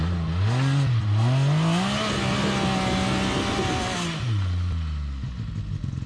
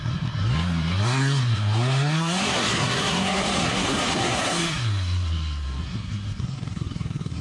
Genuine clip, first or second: first